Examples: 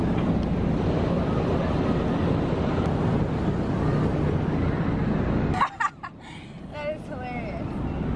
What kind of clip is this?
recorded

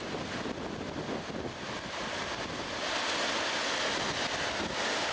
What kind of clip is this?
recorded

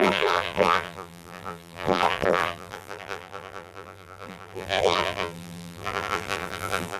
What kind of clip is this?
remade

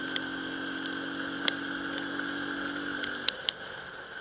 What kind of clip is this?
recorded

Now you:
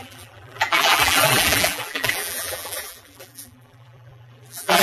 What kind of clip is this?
remade